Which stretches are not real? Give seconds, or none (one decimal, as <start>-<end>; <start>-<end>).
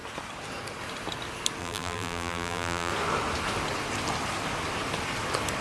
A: 1.6-2.9